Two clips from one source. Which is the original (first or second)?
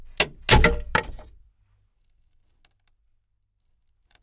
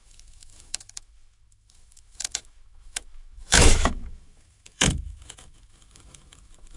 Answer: first